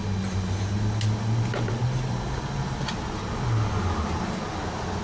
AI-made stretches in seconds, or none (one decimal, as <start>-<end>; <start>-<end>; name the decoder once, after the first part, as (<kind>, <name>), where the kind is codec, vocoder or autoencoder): none